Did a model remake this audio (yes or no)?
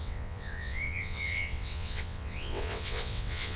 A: yes